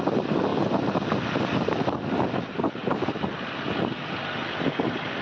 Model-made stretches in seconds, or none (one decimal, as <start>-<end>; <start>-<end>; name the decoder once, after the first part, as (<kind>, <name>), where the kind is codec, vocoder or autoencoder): none